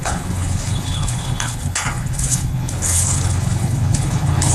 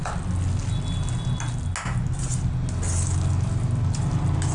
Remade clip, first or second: first